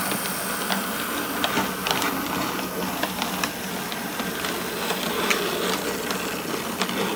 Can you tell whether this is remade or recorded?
recorded